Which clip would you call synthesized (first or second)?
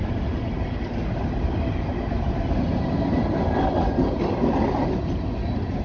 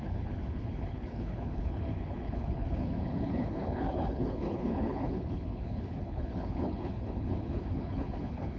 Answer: second